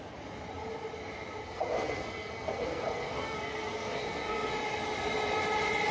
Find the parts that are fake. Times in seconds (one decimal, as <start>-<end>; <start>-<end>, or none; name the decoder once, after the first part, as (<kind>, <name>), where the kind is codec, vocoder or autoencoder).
1.4-4.5 (codec, SNAC)